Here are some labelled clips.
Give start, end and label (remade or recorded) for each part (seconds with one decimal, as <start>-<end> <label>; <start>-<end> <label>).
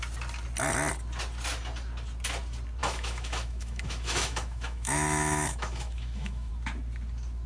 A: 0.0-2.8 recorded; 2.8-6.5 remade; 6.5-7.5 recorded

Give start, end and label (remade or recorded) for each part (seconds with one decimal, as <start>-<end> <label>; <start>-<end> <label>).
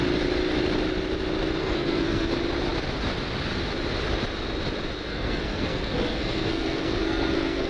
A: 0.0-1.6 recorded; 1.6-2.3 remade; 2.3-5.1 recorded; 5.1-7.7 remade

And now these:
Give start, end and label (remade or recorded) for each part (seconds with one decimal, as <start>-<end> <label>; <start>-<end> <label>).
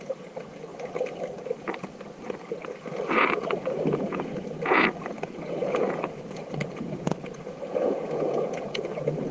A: 0.0-0.7 remade; 0.7-3.1 recorded; 3.1-9.3 remade